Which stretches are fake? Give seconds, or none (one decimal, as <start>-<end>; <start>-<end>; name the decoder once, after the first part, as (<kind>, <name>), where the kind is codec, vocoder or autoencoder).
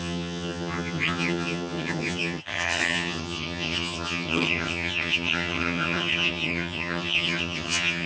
0.0-8.1 (vocoder, HiFi-GAN)